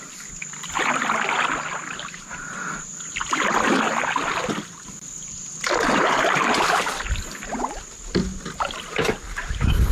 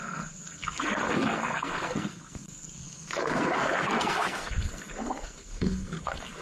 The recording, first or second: first